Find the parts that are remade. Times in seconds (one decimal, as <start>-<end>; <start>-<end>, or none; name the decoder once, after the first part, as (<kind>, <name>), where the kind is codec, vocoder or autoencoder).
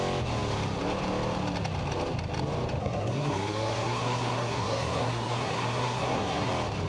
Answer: 2.8-6.5 (codec, SNAC)